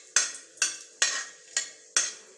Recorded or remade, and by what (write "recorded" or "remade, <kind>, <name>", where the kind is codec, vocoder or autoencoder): recorded